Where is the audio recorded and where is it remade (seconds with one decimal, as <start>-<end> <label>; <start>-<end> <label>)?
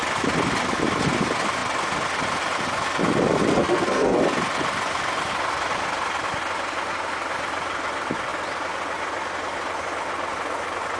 0.0-3.5 recorded; 3.5-4.2 remade; 4.2-11.0 recorded